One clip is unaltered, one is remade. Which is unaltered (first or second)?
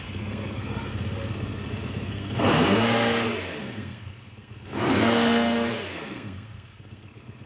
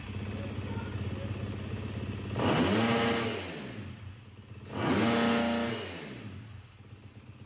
second